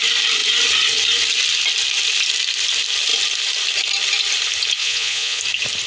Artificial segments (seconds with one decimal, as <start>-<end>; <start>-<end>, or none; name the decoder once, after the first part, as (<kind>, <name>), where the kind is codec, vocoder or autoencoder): 4.8-5.4 (vocoder, Vocos)